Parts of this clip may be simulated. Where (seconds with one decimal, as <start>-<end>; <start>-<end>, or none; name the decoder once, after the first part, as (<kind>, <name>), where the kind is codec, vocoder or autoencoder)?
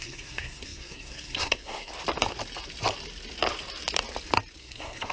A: 0.0-1.9 (codec, SNAC); 4.6-5.1